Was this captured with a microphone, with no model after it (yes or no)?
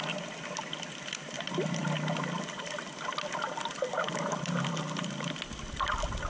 yes